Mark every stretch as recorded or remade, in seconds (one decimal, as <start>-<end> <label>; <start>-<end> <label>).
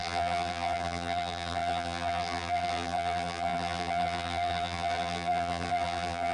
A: 0.0-6.3 remade